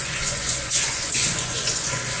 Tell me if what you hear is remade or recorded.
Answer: remade